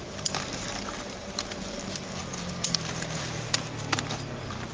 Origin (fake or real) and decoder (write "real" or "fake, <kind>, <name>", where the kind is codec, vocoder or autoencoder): fake, vocoder, BigVGAN v2